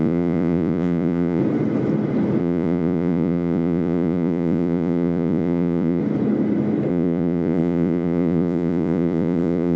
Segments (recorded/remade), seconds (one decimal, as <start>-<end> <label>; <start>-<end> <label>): 0.0-1.4 remade; 1.4-2.4 recorded; 2.4-6.0 remade; 6.0-6.9 recorded; 6.9-9.8 remade